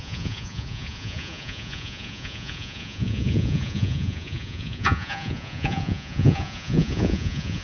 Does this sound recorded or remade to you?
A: remade